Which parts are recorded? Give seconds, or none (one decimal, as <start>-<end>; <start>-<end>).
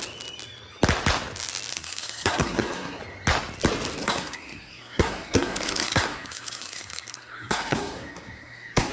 0.0-1.7; 3.0-4.0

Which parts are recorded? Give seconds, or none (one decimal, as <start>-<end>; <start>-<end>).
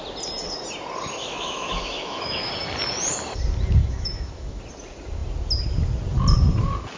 0.0-1.2; 2.5-3.8; 4.6-7.0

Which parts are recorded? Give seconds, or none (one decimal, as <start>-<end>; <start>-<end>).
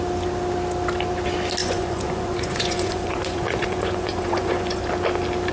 0.0-1.6; 4.9-5.5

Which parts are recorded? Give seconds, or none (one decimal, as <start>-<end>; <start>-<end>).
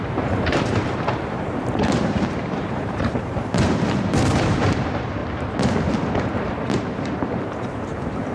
5.2-6.2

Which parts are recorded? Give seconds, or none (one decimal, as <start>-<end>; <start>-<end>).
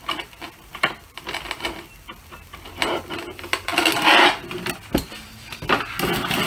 0.0-6.5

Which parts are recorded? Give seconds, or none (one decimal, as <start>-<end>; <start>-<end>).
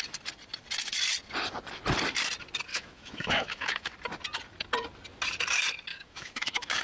0.0-2.7; 3.9-5.9